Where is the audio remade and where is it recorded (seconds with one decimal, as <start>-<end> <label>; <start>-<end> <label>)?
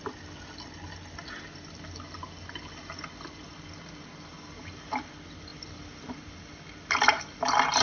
0.0-7.8 recorded